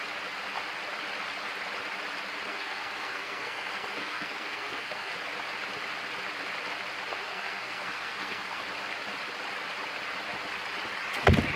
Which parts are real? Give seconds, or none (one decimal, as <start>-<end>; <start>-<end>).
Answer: 0.0-2.5; 5.1-7.1; 8.6-11.6